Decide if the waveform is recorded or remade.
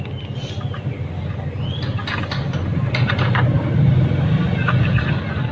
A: recorded